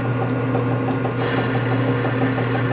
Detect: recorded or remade recorded